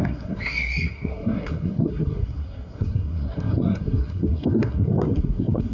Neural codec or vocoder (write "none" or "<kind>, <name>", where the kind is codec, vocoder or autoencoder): codec, SNAC